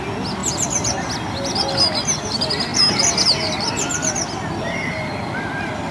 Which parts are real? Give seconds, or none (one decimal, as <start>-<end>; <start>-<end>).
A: 0.0-5.9